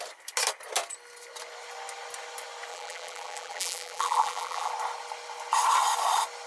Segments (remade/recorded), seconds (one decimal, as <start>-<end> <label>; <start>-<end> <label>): 0.0-2.7 recorded; 2.7-4.7 remade; 4.7-6.5 recorded